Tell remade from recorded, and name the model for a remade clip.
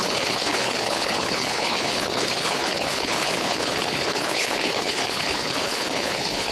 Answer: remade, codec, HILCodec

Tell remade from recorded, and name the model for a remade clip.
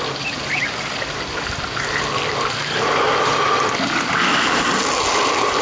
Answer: recorded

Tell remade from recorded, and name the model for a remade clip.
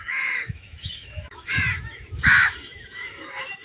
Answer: remade, autoencoder, DAC-VAE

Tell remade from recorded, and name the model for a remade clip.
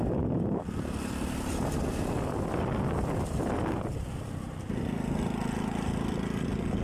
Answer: recorded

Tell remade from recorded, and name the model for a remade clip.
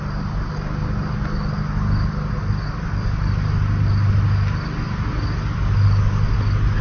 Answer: recorded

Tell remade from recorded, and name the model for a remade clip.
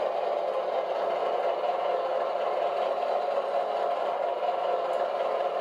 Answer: recorded